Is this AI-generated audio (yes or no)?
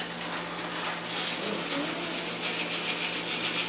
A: no